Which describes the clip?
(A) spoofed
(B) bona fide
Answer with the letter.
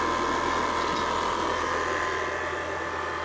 B